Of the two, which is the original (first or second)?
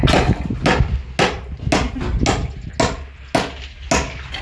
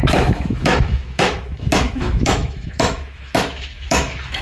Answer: first